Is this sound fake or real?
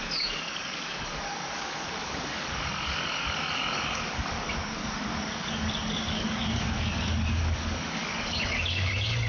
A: fake